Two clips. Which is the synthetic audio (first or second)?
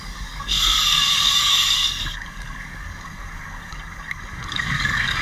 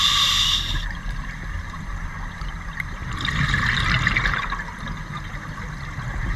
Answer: first